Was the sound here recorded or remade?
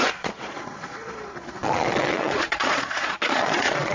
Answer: remade